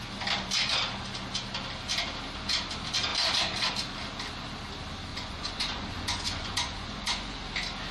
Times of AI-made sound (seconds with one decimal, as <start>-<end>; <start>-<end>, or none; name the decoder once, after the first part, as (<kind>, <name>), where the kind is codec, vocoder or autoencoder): 5.1-7.4 (vocoder, Vocos)